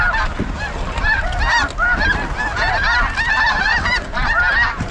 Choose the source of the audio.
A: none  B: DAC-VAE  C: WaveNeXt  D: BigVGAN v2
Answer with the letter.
A